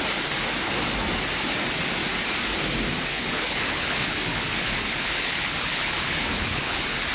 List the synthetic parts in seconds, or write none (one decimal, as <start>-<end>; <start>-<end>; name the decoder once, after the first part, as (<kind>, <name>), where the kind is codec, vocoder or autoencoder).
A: 3.1-7.1 (codec, HILCodec)